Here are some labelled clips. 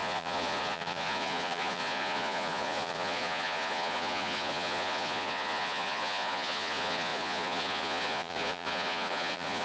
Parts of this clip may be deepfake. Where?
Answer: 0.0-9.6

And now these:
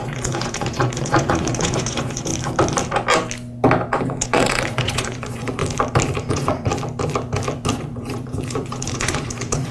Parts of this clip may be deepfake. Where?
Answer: 0.0-2.3; 4.0-5.6; 6.3-6.7; 7.7-9.7

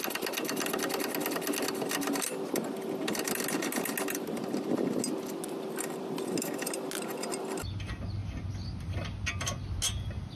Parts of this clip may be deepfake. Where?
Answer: none

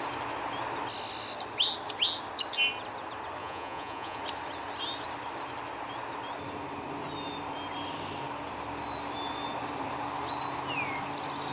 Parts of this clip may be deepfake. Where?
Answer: 3.4-4.2

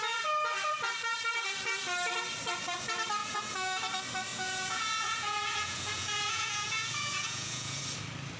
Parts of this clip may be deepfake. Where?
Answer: 3.2-3.8; 4.3-7.8

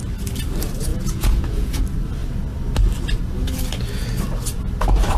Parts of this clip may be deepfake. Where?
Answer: 0.9-1.8

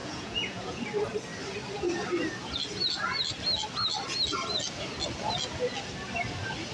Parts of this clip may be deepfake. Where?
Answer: 0.0-0.8